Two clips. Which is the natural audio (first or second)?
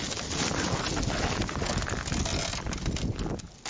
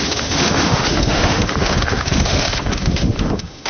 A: first